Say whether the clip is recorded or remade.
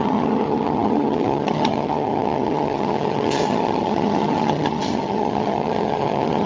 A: remade